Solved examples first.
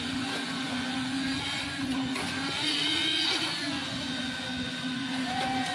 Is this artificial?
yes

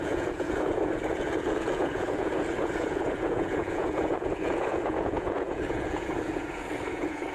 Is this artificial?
yes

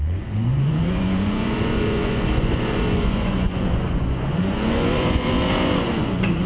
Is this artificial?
yes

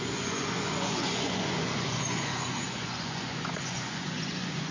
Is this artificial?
yes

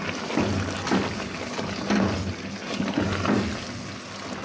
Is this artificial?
no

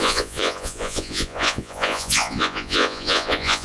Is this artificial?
yes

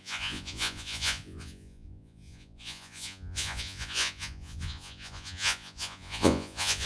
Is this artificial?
yes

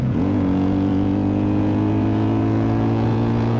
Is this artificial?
yes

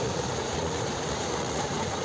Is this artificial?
yes